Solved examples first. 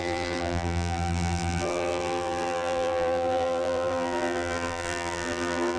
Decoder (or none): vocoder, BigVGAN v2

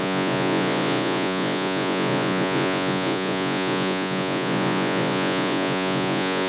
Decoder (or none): vocoder, Vocos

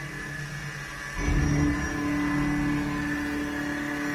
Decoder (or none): none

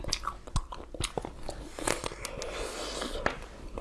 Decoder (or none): none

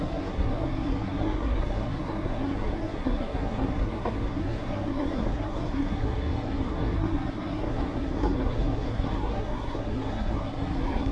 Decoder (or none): codec, SNAC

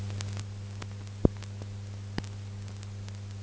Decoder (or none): none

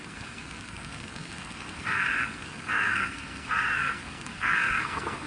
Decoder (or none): codec, SNAC